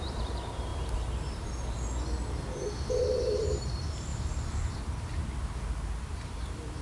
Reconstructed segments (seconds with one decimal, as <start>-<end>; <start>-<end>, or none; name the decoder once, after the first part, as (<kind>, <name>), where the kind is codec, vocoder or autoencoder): 0.0-0.7 (vocoder, BigVGAN v2); 2.9-4.1; 6.0-6.8